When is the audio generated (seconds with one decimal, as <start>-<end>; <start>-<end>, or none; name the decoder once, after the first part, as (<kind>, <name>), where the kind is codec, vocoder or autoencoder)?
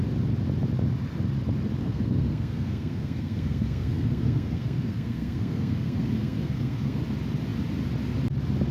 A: 1.8-7.0 (codec, SNAC)